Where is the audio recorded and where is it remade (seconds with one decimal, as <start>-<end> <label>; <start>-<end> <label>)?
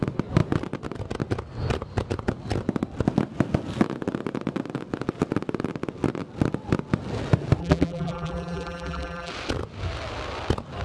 0.0-7.6 recorded; 7.6-9.3 remade; 9.3-10.8 recorded